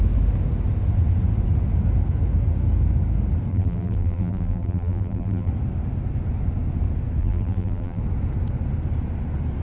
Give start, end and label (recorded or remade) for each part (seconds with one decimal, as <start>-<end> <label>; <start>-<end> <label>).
0.0-3.5 recorded; 3.5-5.5 remade; 5.5-7.2 recorded; 7.2-8.0 remade; 8.0-9.6 recorded